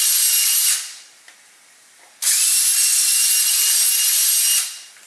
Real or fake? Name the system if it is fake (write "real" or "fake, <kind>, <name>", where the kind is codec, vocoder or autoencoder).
real